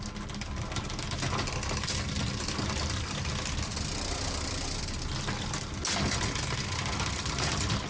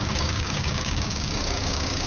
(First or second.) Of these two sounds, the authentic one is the first